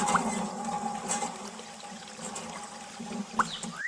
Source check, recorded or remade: recorded